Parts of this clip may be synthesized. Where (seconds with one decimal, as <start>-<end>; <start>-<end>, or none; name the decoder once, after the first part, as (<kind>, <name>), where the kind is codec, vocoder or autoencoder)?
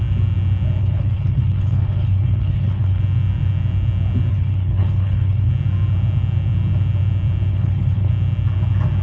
0.8-3.0 (codec, HILCodec); 4.3-5.5; 7.5-8.1